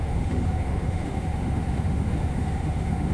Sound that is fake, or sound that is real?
fake